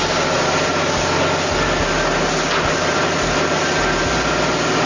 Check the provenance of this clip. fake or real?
real